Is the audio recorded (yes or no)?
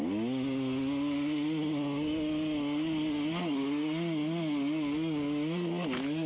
yes